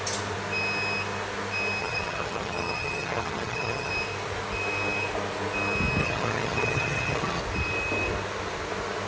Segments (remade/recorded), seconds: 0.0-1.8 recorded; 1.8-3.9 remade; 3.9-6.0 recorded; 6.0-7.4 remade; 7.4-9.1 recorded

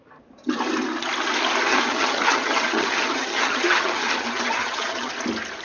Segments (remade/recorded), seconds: 0.0-1.7 recorded; 1.7-5.1 remade; 5.1-5.6 recorded